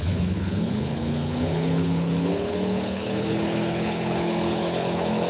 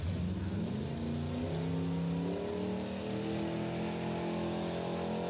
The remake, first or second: first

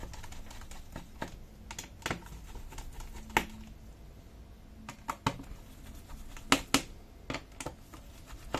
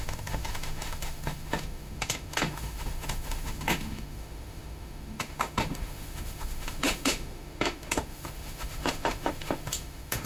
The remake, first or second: second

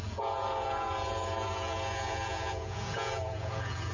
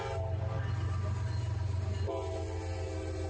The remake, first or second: first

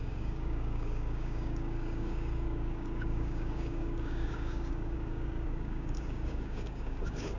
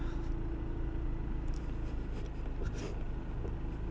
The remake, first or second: first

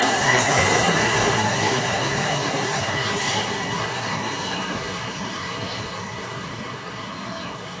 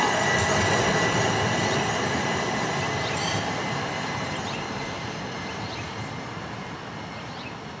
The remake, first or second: first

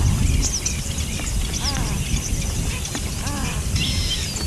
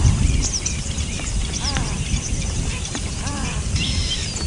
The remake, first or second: second